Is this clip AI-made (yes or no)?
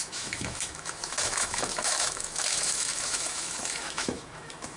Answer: yes